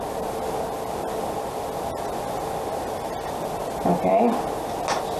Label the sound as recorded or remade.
recorded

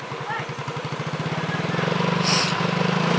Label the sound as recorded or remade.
recorded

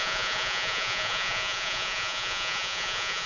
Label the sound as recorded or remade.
remade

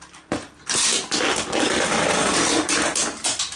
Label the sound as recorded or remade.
recorded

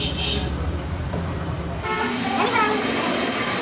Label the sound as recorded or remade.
recorded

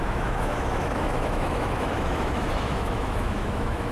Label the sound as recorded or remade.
remade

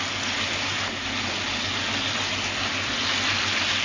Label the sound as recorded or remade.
recorded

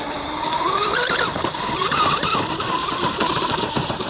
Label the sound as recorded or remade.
remade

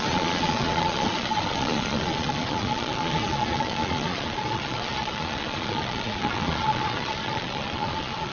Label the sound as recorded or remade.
remade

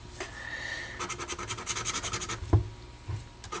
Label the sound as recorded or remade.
recorded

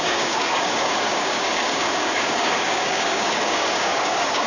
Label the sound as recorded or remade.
remade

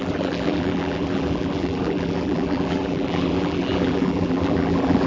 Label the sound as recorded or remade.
remade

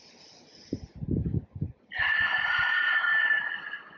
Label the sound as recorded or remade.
recorded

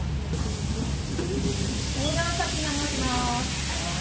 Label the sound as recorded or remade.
recorded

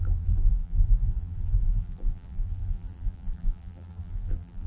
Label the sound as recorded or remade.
remade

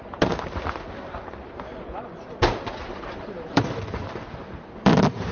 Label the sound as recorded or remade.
remade